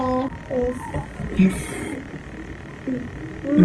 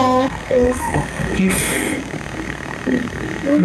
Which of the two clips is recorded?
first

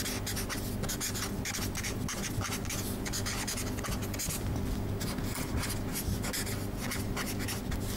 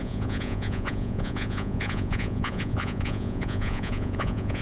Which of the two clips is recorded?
first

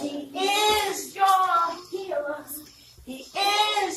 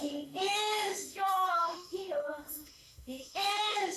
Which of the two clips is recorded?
first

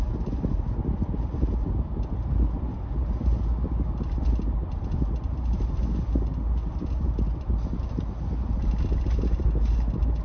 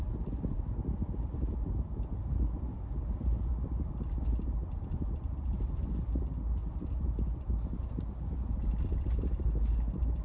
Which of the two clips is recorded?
first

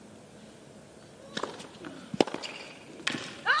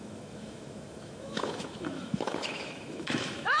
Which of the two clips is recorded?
first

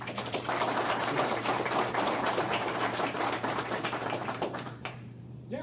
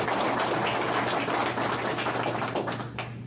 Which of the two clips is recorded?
second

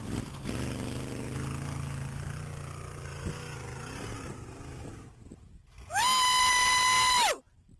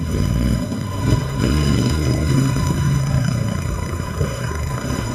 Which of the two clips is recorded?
first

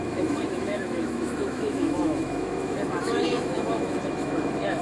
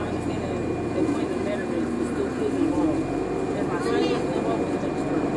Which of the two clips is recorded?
second